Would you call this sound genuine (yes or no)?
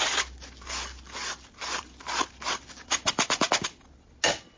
yes